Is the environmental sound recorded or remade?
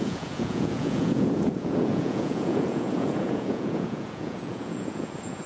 remade